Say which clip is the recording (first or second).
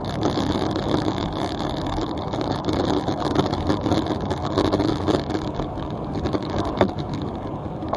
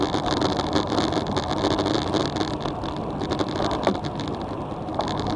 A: second